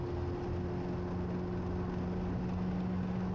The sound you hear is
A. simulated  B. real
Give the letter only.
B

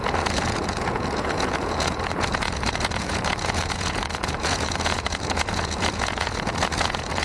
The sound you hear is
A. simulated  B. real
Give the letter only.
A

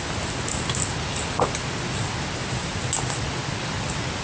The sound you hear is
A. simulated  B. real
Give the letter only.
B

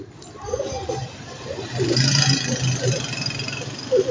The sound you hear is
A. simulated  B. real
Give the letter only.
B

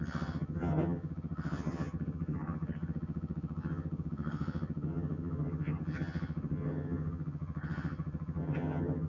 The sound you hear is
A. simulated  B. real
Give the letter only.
A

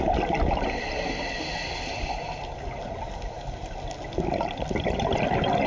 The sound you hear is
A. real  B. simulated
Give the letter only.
A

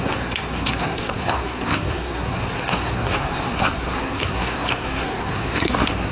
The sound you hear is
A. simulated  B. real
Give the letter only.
A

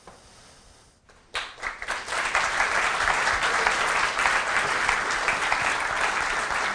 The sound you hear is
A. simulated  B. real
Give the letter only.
B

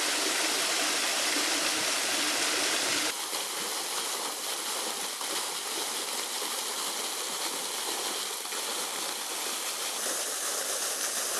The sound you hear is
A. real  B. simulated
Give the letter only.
A